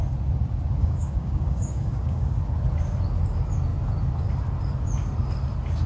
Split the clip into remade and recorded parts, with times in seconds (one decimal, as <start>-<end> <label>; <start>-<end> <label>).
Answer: 0.0-0.8 recorded; 0.8-2.4 remade; 2.4-5.9 recorded